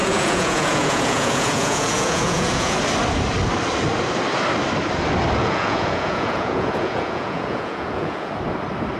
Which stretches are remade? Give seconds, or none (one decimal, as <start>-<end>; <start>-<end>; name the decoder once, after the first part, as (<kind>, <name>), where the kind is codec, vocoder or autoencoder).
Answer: 0.0-2.8 (vocoder, Vocos); 5.4-8.3